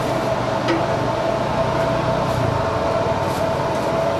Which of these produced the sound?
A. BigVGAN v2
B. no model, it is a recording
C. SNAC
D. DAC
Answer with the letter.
B